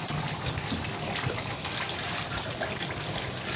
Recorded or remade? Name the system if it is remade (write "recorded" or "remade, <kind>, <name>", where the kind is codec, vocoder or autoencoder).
recorded